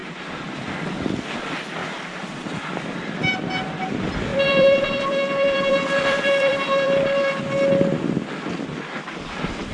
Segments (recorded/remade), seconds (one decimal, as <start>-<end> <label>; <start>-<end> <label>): 0.0-1.8 recorded; 1.8-2.8 remade; 2.8-4.3 recorded; 4.3-7.4 remade; 7.4-9.7 recorded